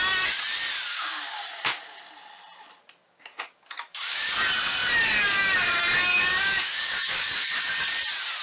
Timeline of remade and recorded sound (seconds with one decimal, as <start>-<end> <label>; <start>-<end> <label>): 0.0-0.9 recorded; 0.9-1.8 remade; 1.8-3.0 recorded; 3.0-4.3 remade; 4.3-6.1 recorded; 6.1-7.7 remade; 7.7-8.4 recorded